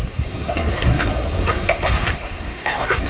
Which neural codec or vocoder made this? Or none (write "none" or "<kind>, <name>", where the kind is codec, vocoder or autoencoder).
codec, SNAC